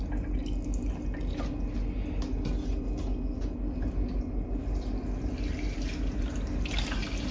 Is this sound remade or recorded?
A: recorded